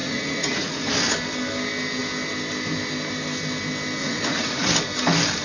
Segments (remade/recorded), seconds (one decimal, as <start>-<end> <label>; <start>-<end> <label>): 0.0-0.9 remade; 0.9-4.0 recorded; 4.0-4.7 remade; 4.7-5.4 recorded